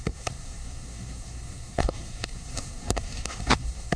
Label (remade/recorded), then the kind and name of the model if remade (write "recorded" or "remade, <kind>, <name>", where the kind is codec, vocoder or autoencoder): remade, codec, SNAC